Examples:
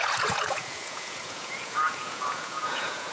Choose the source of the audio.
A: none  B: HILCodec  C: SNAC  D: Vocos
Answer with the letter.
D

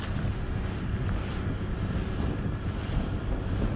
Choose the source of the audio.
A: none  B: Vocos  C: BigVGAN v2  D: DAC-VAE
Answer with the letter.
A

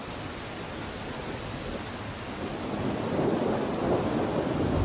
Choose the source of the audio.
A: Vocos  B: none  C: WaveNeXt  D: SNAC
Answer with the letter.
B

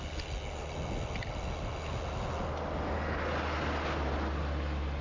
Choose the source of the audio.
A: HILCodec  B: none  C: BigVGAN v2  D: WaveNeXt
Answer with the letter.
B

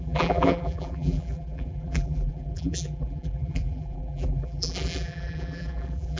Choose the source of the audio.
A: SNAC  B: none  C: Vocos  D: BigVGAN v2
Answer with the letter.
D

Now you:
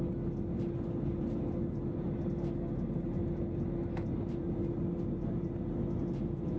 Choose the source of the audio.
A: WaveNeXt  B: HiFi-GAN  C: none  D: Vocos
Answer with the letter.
C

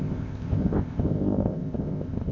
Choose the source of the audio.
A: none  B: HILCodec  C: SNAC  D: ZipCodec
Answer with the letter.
D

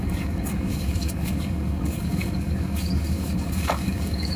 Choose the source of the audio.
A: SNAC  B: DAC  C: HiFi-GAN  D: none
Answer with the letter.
B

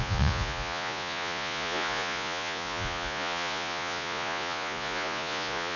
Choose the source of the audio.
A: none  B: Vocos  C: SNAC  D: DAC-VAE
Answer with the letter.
B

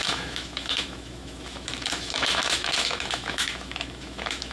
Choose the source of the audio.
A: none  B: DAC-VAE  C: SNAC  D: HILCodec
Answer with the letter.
B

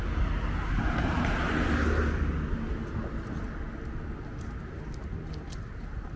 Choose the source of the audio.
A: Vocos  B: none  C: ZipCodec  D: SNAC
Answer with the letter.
B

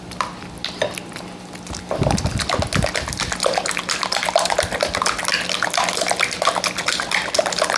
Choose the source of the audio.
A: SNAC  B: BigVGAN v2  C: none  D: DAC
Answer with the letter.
C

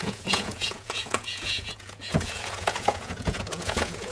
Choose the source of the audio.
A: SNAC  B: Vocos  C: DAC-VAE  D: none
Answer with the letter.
B